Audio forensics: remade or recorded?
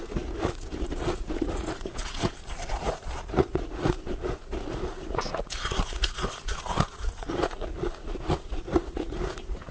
remade